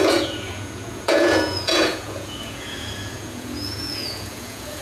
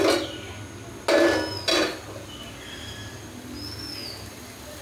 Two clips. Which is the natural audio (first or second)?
second